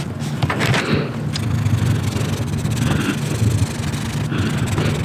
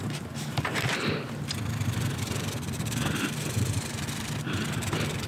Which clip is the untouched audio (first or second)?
first